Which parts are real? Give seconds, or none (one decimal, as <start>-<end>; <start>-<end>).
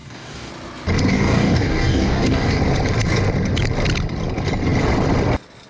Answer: 0.5-1.1; 2.6-5.7